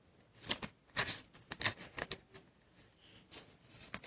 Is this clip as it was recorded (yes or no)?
yes